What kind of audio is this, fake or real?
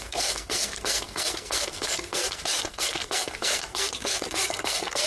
fake